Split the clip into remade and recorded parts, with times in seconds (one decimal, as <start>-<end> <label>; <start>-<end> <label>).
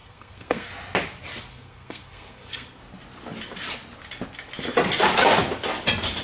0.0-0.7 remade; 0.7-1.5 recorded; 1.5-2.8 remade; 2.8-6.2 recorded